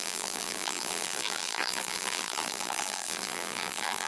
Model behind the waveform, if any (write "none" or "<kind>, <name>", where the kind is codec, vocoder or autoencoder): vocoder, BigVGAN v2